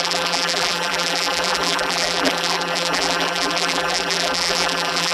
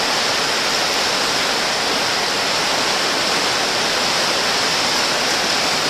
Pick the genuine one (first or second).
second